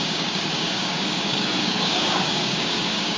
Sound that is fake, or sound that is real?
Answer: fake